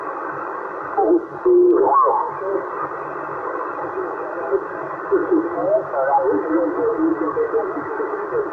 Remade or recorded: recorded